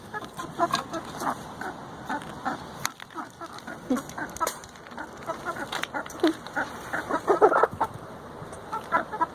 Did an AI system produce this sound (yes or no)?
no